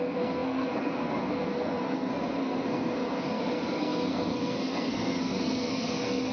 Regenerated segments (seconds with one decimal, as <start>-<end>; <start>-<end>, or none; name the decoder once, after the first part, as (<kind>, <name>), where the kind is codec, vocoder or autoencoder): 0.0-6.3 (codec, SNAC)